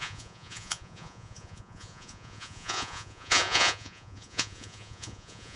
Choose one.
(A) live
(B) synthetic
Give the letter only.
B